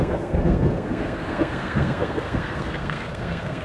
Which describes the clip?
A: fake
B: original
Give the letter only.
A